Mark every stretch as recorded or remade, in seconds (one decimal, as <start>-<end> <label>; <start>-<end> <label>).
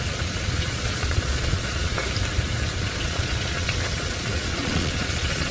0.0-2.0 remade; 2.0-2.8 recorded; 2.8-5.5 remade